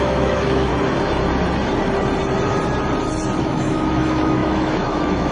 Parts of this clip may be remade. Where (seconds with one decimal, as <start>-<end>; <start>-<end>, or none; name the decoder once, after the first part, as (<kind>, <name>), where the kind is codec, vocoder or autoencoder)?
0.0-0.7 (autoencoder, DAC-VAE); 3.4-5.3